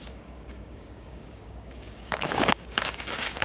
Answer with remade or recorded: remade